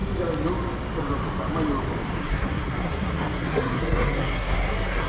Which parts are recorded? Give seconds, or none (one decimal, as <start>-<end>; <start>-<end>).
0.0-2.2